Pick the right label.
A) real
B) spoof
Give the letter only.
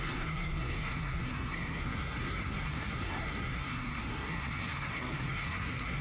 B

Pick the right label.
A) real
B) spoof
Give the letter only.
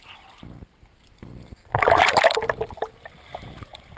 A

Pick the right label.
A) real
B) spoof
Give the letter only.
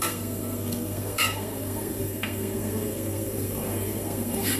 B